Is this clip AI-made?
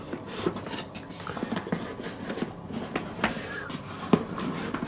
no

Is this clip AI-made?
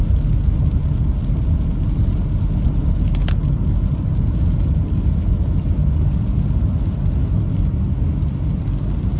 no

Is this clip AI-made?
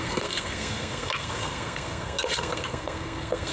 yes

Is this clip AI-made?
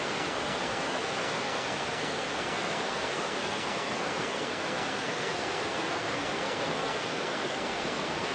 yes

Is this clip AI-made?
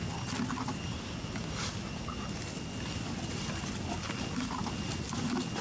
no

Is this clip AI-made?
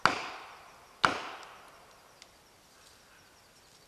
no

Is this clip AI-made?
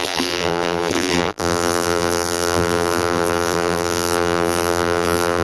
yes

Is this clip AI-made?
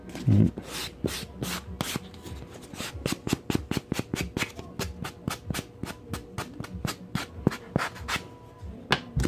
no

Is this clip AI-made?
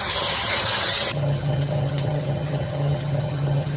yes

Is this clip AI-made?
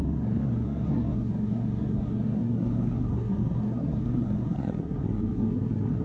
yes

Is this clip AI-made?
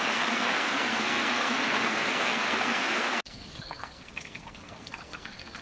yes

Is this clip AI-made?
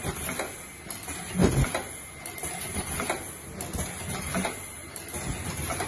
no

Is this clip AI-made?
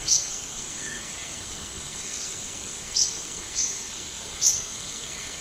yes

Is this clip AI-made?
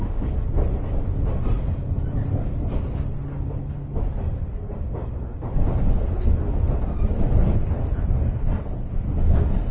no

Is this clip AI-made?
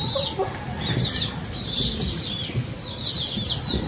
no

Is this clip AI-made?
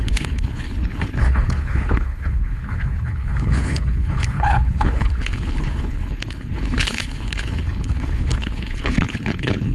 yes